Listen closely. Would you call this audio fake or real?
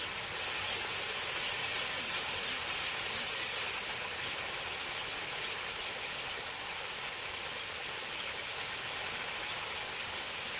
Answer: real